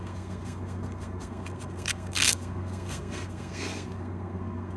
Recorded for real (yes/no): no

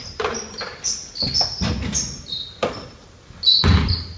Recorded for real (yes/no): yes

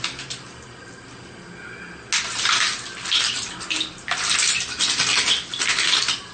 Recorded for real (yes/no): yes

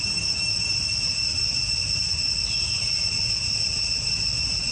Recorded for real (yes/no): yes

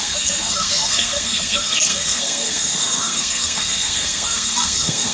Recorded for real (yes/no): no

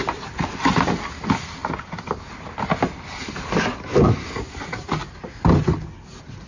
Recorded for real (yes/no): yes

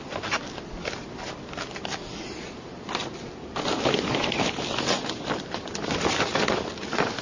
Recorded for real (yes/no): yes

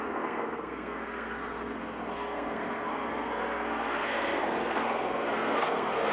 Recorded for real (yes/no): no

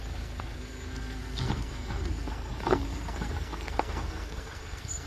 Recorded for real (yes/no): no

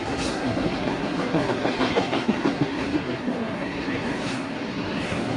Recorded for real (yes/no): no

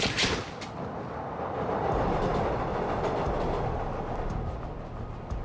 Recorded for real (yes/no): yes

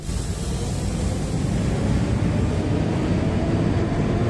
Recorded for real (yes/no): yes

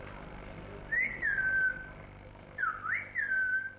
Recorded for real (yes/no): yes